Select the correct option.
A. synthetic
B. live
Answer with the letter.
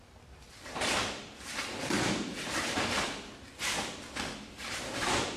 B